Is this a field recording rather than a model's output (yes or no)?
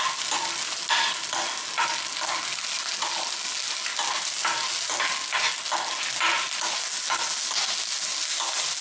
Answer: yes